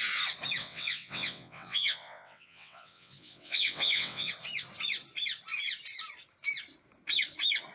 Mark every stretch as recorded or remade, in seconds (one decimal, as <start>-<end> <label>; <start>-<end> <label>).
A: 0.0-0.6 recorded; 0.6-4.3 remade; 4.3-7.7 recorded